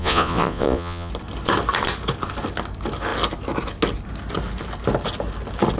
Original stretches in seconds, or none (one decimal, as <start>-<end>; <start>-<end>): 1.1-5.8